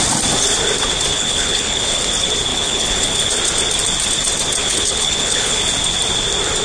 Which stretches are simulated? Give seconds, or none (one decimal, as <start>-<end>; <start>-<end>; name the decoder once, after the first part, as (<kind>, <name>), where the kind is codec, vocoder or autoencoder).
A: 1.1-2.0 (codec, HILCodec); 2.5-3.3; 4.6-5.6